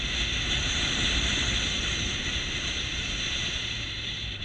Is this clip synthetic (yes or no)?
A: yes